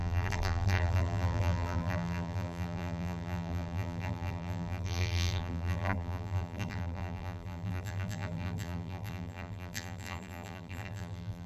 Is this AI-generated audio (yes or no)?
yes